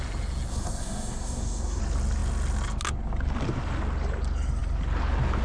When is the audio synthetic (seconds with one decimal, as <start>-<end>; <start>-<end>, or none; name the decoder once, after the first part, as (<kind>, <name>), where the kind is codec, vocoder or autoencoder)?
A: 0.5-1.8 (codec, SNAC)